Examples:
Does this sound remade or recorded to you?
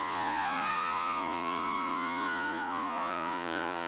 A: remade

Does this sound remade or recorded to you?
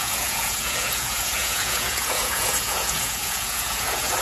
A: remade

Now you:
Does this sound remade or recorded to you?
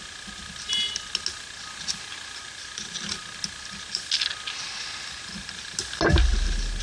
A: recorded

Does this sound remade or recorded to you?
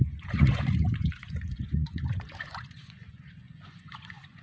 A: remade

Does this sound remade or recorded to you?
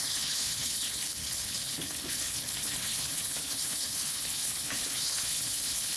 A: remade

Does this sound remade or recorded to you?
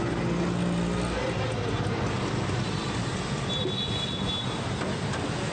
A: recorded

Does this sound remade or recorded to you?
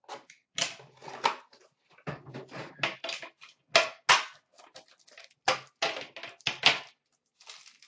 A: recorded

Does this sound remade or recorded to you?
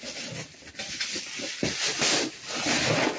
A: recorded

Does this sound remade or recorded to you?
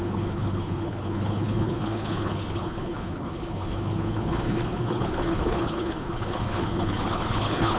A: remade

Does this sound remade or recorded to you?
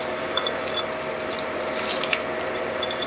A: remade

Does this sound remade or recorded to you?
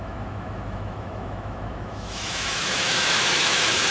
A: remade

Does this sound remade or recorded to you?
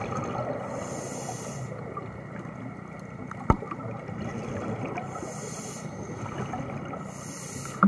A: recorded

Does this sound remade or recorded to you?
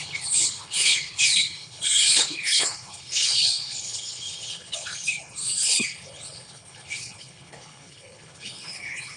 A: remade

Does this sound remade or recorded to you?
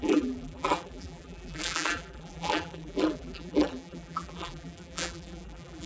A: remade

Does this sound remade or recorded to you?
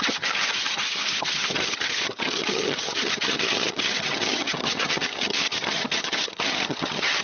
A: remade